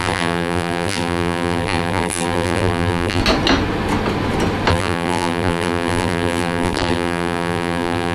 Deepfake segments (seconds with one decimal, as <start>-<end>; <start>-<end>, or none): 0.0-3.2; 4.7-8.1